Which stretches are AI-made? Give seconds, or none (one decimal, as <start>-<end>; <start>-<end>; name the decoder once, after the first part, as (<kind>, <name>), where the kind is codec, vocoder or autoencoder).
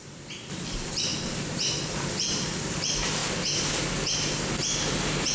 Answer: 0.0-1.1 (vocoder, BigVGAN v2); 1.7-3.2